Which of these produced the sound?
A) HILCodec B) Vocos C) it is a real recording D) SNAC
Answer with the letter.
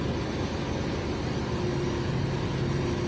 C